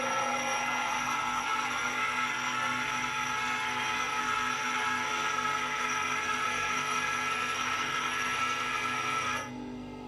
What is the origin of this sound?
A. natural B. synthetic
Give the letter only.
B